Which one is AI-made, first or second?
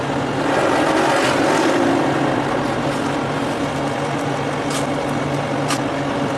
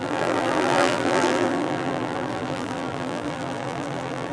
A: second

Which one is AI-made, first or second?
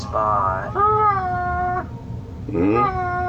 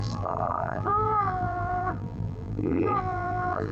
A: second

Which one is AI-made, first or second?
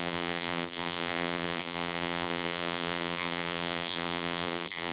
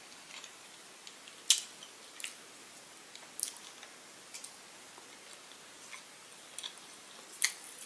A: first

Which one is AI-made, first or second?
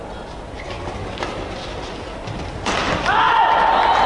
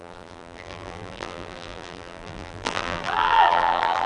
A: second